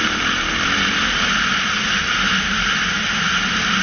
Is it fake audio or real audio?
real